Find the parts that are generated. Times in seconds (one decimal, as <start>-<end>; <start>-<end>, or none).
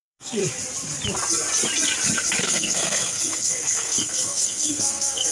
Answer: 0.0-0.4; 2.4-5.3